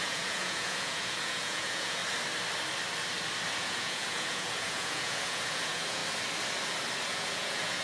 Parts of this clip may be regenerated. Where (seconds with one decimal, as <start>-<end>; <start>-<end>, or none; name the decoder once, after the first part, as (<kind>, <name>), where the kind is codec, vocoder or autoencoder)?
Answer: 0.0-2.0 (vocoder, Vocos); 3.5-6.0; 7.1-7.8